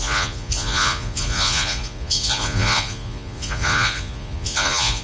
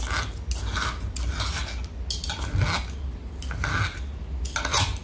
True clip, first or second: second